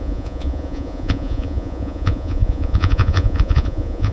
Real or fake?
fake